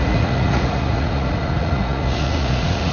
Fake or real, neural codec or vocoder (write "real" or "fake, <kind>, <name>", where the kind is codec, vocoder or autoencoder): fake, vocoder, Vocos